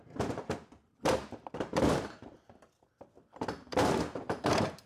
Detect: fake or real fake